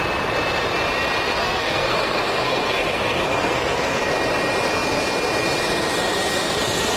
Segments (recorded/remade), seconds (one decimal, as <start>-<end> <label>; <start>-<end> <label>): 0.0-1.4 recorded; 1.4-4.0 remade; 4.0-7.0 recorded

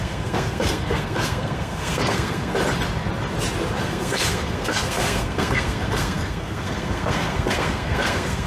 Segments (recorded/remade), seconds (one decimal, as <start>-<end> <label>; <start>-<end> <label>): 0.0-2.5 remade; 2.5-3.8 recorded; 3.8-8.5 remade